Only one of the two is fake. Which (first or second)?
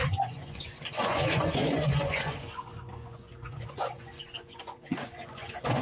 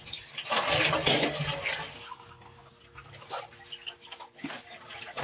first